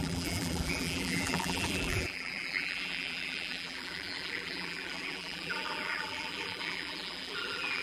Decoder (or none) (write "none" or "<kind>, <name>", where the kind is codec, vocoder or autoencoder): vocoder, BigVGAN v2